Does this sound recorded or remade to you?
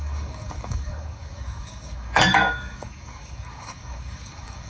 remade